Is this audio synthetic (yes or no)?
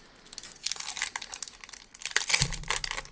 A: no